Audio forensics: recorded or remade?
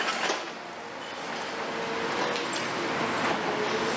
recorded